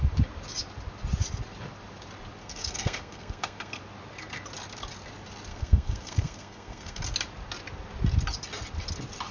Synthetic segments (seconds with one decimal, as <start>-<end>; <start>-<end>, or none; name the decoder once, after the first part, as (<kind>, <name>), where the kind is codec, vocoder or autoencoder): 2.4-3.8 (codec, SNAC); 5.5-7.0